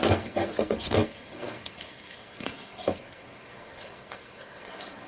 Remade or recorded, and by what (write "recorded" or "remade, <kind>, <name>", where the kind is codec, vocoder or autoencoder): remade, codec, SNAC